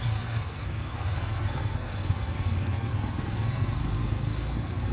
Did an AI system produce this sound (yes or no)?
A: yes